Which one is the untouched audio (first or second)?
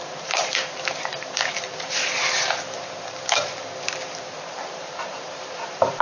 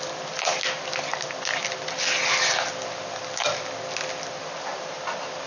second